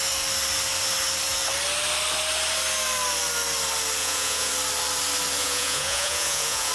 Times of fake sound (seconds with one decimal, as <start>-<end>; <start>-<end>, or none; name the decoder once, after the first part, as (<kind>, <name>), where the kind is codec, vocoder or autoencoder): 4.0-4.5 (vocoder, Vocos); 5.4-6.7